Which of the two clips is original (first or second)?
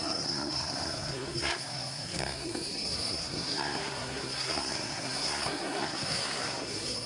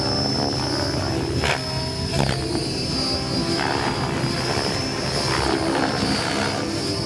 second